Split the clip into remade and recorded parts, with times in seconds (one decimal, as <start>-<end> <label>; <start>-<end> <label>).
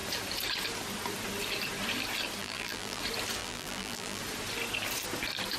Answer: 0.0-2.4 recorded; 2.4-3.0 remade; 3.0-3.4 recorded; 3.4-4.2 remade; 4.2-5.6 recorded